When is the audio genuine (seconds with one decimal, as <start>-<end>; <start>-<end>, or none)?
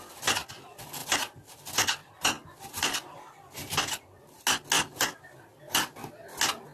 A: 0.0-6.7